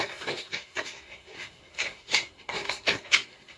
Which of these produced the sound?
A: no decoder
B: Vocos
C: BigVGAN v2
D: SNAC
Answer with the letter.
D